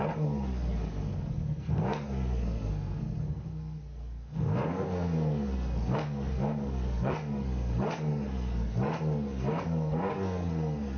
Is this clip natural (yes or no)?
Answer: no